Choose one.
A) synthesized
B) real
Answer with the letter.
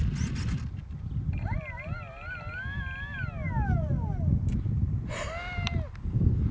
B